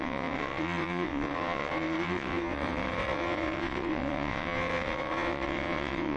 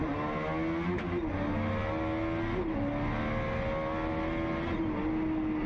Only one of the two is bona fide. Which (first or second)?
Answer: second